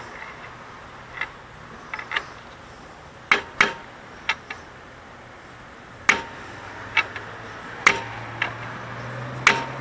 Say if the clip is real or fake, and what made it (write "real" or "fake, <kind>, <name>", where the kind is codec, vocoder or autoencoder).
real